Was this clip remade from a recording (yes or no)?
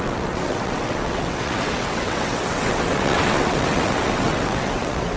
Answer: yes